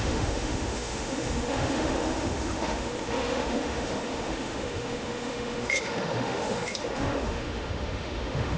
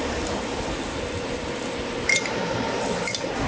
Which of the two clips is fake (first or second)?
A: first